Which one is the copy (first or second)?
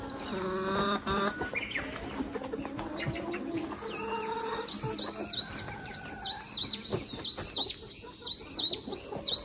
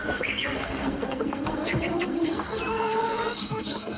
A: second